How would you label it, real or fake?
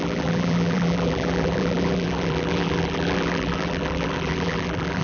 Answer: fake